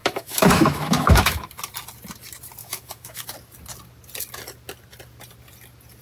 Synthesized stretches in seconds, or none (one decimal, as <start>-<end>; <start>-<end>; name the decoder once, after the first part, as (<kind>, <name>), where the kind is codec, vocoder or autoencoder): 0.0-1.5 (autoencoder, DAC-VAE); 2.6-3.3